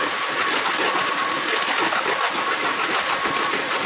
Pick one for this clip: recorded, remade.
recorded